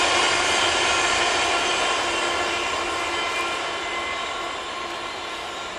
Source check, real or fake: real